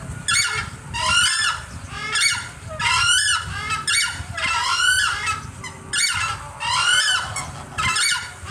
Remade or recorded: recorded